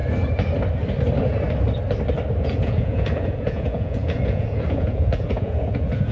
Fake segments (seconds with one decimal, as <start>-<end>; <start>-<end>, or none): 2.4-6.1